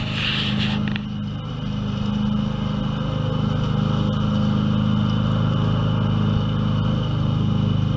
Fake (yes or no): no